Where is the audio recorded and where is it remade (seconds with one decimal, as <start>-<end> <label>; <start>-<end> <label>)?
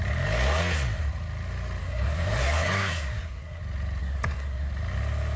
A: 0.0-1.8 recorded; 1.8-3.6 remade; 3.6-4.0 recorded; 4.0-4.7 remade; 4.7-5.4 recorded